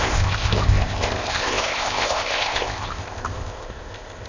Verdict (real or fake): fake